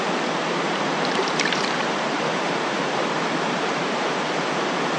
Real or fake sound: fake